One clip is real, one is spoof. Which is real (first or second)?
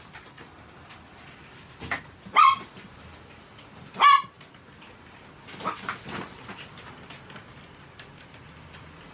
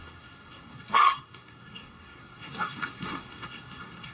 first